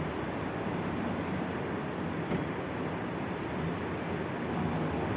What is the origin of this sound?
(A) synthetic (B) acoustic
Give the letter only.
B